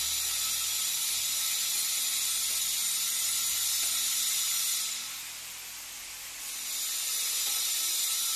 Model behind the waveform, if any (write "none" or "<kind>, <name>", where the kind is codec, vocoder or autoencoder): none